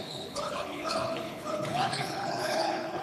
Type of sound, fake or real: fake